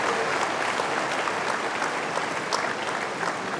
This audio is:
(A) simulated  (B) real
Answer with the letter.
B